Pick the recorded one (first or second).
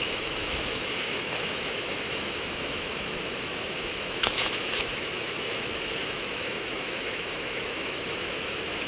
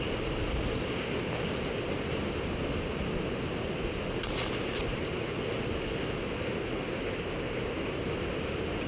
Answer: second